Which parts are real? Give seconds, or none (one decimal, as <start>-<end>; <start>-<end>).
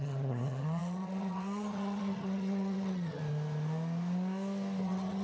3.2-4.8